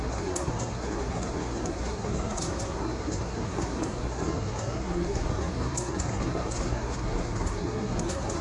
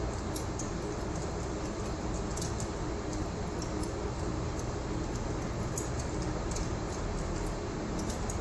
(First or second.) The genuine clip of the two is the second